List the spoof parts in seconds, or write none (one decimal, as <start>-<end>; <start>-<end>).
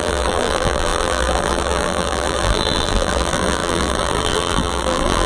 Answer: 0.0-5.3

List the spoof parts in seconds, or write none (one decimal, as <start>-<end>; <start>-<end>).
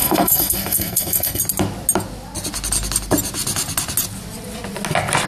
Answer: 0.0-1.4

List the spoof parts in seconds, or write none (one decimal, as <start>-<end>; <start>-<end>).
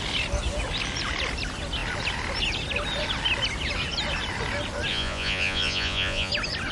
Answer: 4.9-6.3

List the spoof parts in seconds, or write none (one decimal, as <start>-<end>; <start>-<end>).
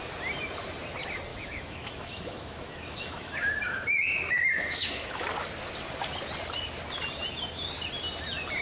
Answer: 1.3-5.2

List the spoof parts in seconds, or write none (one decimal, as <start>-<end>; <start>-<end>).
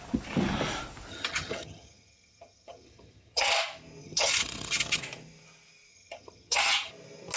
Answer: 1.1-3.5; 4.0-5.0; 5.9-6.9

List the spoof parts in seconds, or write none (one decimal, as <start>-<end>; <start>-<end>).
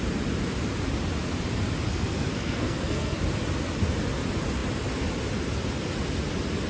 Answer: 1.9-3.2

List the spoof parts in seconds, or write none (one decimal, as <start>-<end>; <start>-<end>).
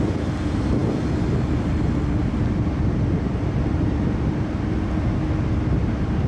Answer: none